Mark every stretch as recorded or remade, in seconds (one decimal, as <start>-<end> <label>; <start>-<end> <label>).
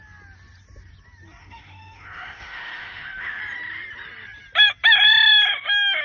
0.0-1.4 recorded; 1.4-3.4 remade; 3.4-6.0 recorded